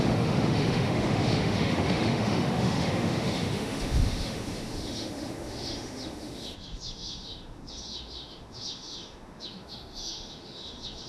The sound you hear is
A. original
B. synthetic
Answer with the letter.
B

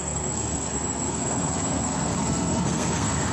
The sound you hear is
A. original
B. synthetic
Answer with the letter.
B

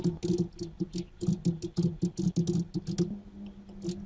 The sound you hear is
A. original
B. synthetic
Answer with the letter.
A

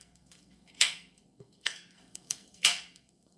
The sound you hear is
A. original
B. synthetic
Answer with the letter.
B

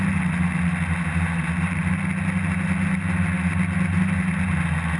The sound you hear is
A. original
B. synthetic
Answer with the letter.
A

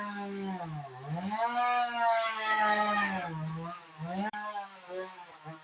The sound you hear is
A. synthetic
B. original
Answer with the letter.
A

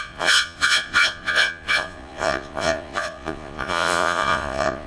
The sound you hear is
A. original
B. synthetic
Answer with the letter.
B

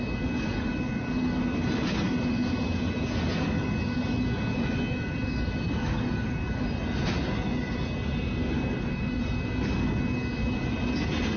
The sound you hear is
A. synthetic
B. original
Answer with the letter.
B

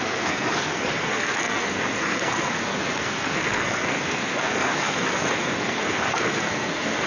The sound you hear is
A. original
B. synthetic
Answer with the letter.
B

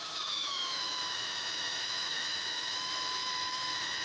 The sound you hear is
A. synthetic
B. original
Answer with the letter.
A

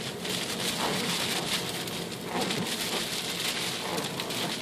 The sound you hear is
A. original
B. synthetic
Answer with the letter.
A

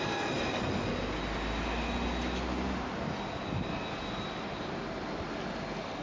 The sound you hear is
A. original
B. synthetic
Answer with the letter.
A